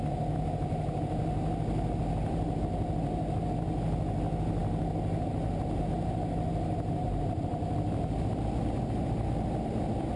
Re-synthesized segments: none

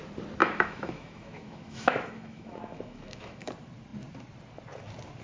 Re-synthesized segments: 0.4-3.5 (autoencoder, DAC-VAE)

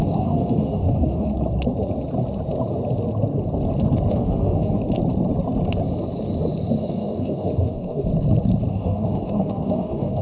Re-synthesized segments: 0.0-1.3 (autoencoder, DAC-VAE); 4.1-4.8; 6.8-8.1; 8.7-10.2

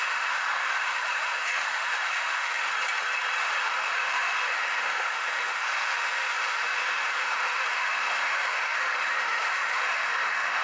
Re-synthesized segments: 0.0-2.7 (autoencoder, DAC-VAE); 3.4-10.6

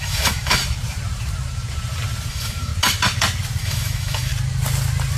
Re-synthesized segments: 0.0-0.6 (autoencoder, DAC-VAE); 2.3-2.7; 3.6-4.3

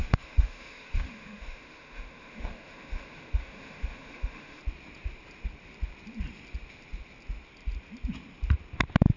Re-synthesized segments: 0.0-4.6 (autoencoder, DAC-VAE)

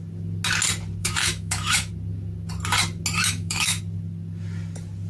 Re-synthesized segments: 1.0-1.9 (autoencoder, DAC-VAE); 3.2-3.8

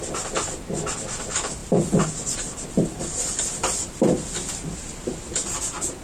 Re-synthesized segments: none